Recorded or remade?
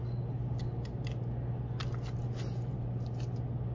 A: recorded